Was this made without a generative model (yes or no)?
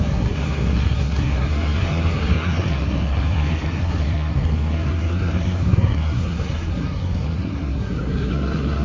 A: no